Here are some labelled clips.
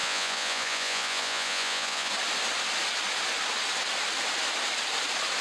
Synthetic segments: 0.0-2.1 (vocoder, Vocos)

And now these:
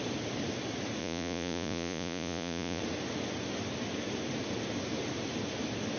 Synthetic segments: 1.0-2.8 (vocoder, Vocos)